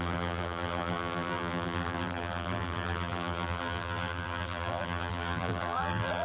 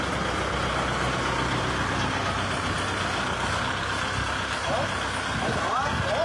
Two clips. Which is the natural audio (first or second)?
second